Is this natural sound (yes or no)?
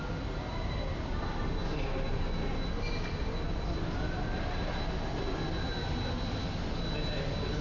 yes